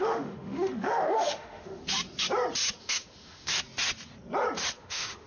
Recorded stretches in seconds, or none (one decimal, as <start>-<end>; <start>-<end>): 1.8-2.8; 3.5-4.8